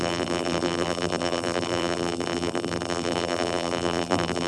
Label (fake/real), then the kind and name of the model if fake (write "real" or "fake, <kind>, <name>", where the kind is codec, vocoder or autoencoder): fake, vocoder, BigVGAN v2